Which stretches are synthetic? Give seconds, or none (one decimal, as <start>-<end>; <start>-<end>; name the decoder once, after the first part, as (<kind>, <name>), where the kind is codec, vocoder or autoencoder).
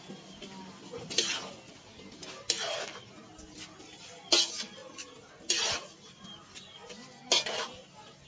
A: none